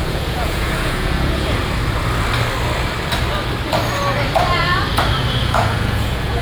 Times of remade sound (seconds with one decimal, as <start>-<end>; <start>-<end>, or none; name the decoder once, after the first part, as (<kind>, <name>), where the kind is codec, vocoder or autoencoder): 0.0-1.6 (vocoder, Vocos); 5.4-6.4